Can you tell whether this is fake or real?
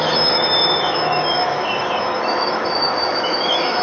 fake